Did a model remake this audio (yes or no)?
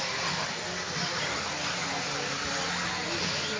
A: no